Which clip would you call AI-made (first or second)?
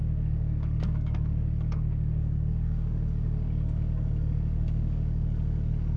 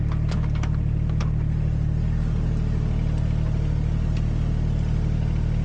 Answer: first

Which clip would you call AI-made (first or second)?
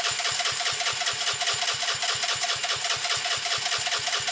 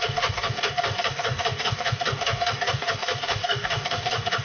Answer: second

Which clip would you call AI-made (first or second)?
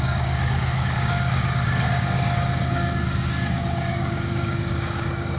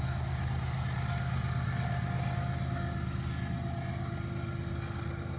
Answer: first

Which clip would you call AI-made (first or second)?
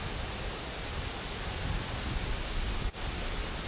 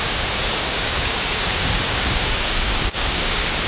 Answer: second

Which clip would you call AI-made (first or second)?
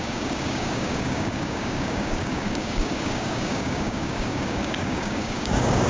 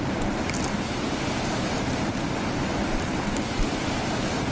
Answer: first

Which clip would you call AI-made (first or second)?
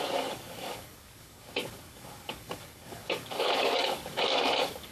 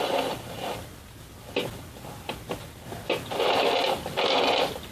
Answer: first